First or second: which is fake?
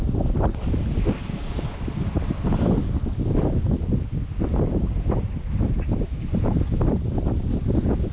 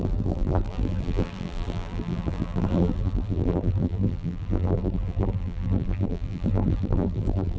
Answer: second